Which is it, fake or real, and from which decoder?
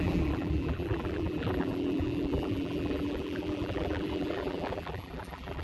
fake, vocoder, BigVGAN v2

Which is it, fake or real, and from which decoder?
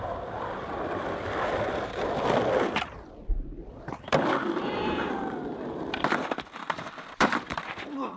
fake, vocoder, BigVGAN v2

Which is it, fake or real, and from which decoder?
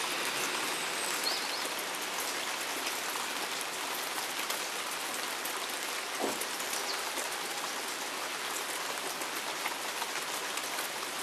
real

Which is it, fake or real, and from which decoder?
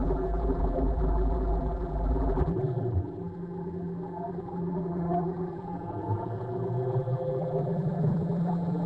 fake, vocoder, BigVGAN v2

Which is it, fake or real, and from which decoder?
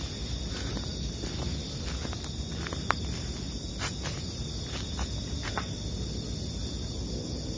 real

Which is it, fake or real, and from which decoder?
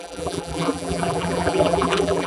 fake, vocoder, BigVGAN v2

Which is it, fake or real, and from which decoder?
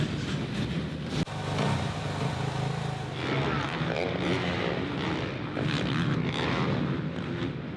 real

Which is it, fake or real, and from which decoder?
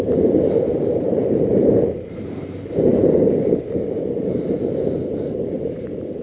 fake, vocoder, BigVGAN v2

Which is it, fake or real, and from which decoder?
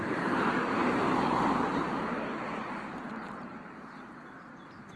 fake, vocoder, BigVGAN v2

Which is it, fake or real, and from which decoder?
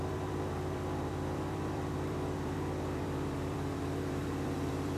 fake, vocoder, BigVGAN v2